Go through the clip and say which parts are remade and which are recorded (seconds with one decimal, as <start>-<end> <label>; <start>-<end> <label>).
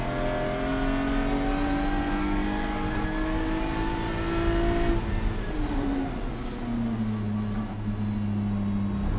0.0-2.2 recorded; 2.2-3.9 remade; 3.9-9.2 recorded